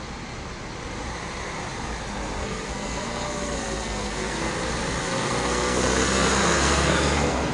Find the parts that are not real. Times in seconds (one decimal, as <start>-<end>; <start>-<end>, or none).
2.4-4.5; 5.0-7.5